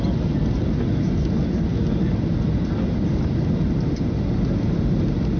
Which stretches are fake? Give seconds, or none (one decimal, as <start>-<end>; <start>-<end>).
none